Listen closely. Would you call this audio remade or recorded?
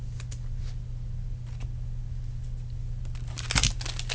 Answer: recorded